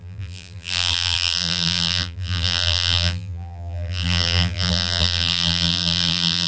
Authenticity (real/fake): fake